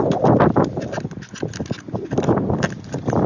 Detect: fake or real real